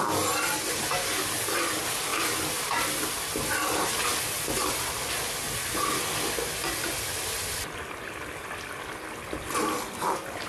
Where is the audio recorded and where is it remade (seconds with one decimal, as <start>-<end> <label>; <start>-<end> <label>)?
0.0-10.5 recorded